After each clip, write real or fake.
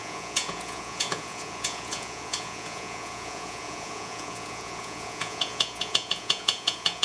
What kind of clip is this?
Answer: fake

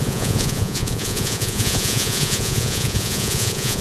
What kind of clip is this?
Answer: fake